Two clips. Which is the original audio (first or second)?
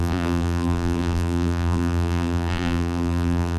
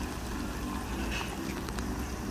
second